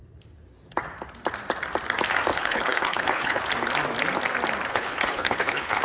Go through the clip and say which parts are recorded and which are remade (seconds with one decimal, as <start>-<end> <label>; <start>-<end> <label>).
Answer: 0.0-2.3 recorded; 2.3-3.4 remade; 3.4-4.7 recorded; 4.7-5.8 remade